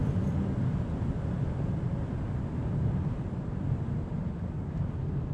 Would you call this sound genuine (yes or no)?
yes